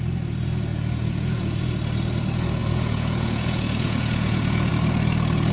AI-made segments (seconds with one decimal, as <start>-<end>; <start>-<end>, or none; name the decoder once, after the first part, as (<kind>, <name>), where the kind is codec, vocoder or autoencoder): 0.7-1.7 (vocoder, Vocos); 2.6-4.7